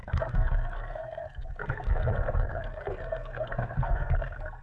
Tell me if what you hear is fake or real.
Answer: fake